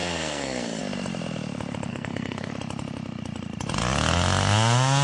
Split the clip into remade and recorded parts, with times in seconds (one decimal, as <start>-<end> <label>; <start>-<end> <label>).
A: 0.0-0.8 remade; 0.8-1.9 recorded; 1.9-2.5 remade; 2.5-5.0 recorded